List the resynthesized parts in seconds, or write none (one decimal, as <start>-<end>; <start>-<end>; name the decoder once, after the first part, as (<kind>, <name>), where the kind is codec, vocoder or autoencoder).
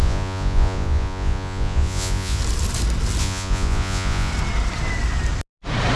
0.0-2.4 (vocoder, Vocos); 3.2-4.3